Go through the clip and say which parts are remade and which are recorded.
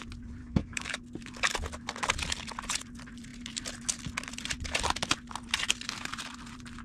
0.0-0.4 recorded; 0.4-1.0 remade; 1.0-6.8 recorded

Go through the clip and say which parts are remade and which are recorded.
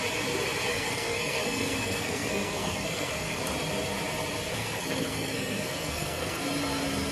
0.0-0.7 recorded; 0.7-3.4 remade; 3.4-4.5 recorded; 4.5-6.4 remade; 6.4-7.1 recorded